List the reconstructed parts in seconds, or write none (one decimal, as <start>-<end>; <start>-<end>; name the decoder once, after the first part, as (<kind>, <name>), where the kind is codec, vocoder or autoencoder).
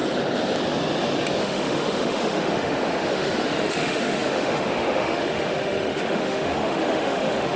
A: 1.4-7.6 (autoencoder, DAC-VAE)